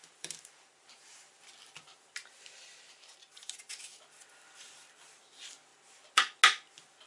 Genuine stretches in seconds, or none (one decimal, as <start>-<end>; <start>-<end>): 1.4-1.9; 3.7-5.7; 6.4-7.1